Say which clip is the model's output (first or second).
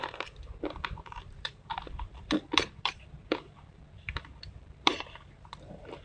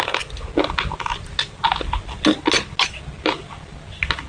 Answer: first